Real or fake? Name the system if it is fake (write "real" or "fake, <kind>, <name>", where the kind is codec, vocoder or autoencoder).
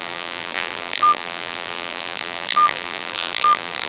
fake, vocoder, BigVGAN v2